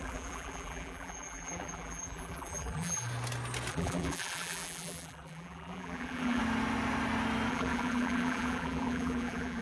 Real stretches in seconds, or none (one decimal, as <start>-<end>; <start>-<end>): 3.1-3.7; 6.4-7.5

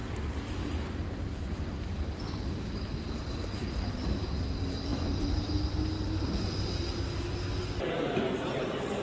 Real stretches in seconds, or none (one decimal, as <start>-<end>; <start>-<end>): 0.0-4.9; 5.5-9.0

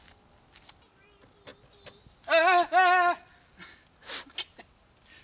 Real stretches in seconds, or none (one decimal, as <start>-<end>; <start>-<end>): 0.0-5.2

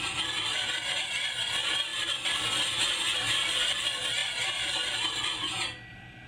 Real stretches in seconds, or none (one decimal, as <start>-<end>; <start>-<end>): 0.0-4.2; 5.2-6.3